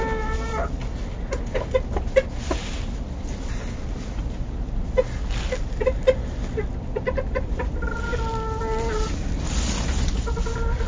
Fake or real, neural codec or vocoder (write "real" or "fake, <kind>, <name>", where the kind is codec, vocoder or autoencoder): real